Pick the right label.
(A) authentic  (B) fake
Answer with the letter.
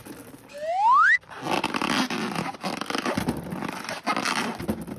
A